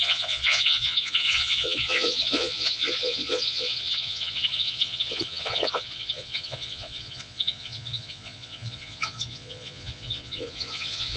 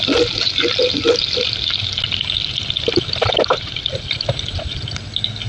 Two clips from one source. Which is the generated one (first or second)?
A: first